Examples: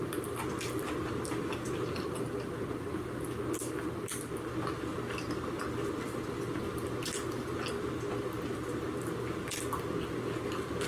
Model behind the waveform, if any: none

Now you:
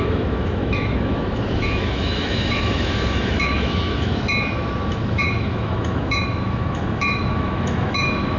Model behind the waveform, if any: autoencoder, DAC-VAE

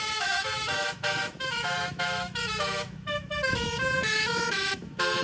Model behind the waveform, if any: autoencoder, DAC-VAE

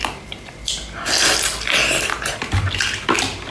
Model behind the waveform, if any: none